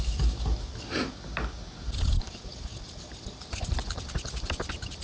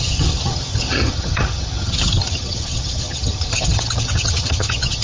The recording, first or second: first